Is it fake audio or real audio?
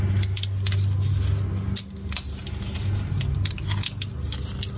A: real